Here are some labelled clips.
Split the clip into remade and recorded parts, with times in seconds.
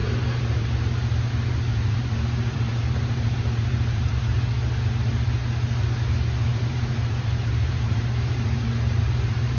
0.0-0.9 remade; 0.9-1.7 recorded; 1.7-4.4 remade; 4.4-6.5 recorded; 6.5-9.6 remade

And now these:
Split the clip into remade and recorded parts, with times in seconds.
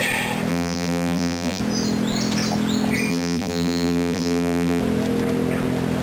0.0-0.5 recorded; 0.5-1.6 remade; 1.6-3.1 recorded; 3.1-4.8 remade; 4.8-6.0 recorded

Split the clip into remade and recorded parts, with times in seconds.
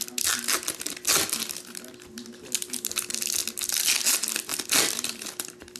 0.0-4.5 recorded; 4.5-5.8 remade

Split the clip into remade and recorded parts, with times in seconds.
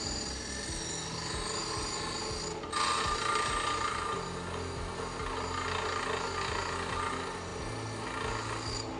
0.0-9.0 recorded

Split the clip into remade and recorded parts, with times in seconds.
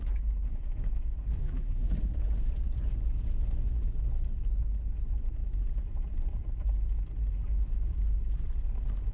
0.0-1.4 recorded; 1.4-1.9 remade; 1.9-9.1 recorded